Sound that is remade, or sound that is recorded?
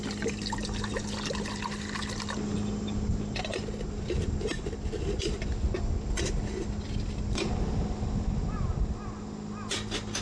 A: recorded